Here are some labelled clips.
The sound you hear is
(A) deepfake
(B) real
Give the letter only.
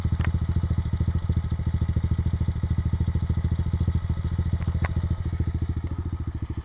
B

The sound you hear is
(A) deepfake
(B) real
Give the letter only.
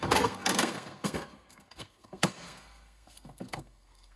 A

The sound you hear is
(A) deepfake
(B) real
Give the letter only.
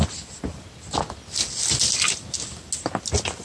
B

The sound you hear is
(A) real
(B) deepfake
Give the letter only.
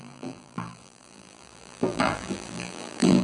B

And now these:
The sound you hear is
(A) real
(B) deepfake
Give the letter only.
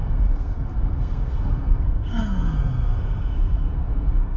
B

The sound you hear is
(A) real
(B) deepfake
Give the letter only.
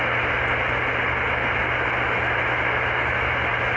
A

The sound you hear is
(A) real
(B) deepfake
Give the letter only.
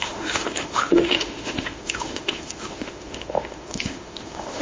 B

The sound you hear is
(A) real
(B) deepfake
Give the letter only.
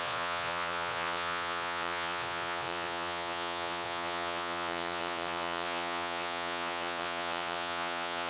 B